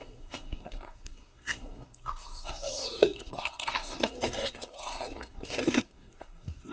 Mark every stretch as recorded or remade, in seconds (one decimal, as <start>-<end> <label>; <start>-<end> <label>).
0.0-6.7 remade